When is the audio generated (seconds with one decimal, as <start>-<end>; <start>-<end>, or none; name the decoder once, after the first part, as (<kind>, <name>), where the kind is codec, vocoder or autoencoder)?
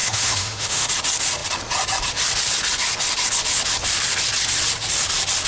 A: 0.0-0.9 (autoencoder, DAC-VAE)